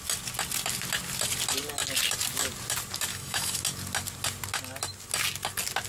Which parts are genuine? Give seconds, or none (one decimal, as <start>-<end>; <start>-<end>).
0.0-3.1; 3.6-5.9